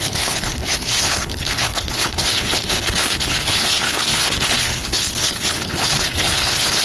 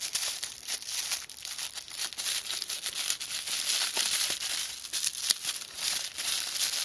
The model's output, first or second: first